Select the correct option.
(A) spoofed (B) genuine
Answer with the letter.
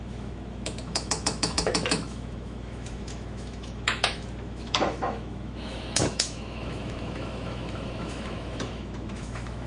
A